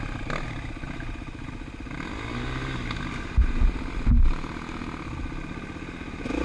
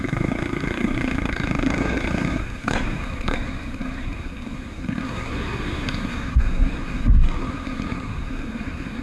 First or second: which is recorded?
first